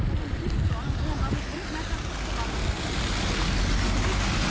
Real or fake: real